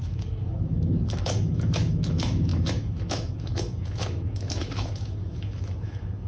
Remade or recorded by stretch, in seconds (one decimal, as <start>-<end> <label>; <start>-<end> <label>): 0.0-6.3 remade

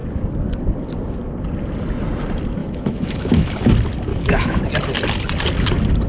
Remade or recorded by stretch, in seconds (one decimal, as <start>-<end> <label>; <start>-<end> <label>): 0.0-2.6 recorded; 2.6-3.5 remade; 3.5-4.1 recorded; 4.1-4.6 remade; 4.6-6.1 recorded

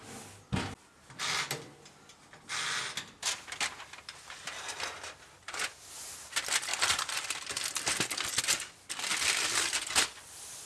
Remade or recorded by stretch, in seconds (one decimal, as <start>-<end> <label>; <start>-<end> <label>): 0.0-10.7 recorded

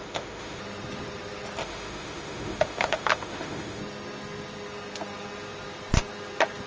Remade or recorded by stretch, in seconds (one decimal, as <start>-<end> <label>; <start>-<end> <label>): 0.0-0.6 remade; 0.6-1.6 recorded; 1.6-3.8 remade; 3.8-6.7 recorded

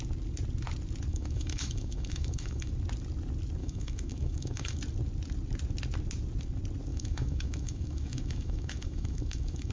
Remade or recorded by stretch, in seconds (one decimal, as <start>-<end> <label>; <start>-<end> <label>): 0.0-1.1 recorded; 1.1-2.7 remade; 2.7-3.6 recorded; 3.6-4.8 remade; 4.8-6.9 recorded; 6.9-9.7 remade

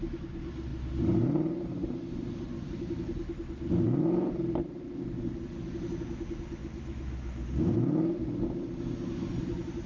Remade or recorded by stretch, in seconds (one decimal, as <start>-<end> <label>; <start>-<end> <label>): 0.0-6.6 recorded; 6.6-7.5 remade; 7.5-9.9 recorded